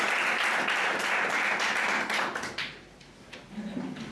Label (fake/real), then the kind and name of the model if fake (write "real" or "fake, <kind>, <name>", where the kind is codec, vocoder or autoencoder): real